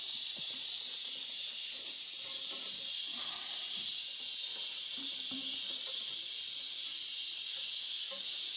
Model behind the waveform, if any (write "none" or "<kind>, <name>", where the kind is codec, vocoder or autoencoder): vocoder, BigVGAN v2